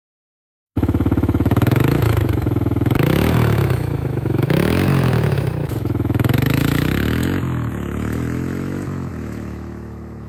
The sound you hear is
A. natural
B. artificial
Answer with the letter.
B